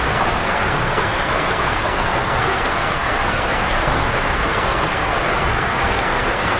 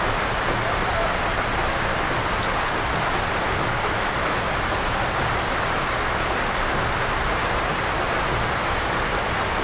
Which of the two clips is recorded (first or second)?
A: second